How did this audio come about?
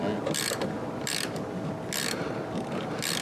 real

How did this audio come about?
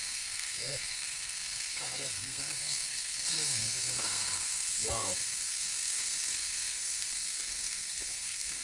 fake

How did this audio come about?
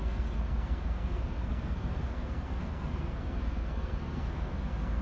fake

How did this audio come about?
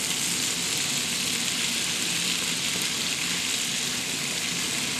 real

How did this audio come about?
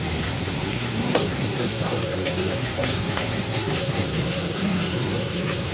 fake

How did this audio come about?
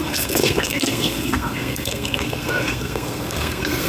fake